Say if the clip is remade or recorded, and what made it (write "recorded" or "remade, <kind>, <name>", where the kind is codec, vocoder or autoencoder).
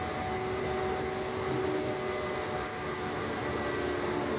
recorded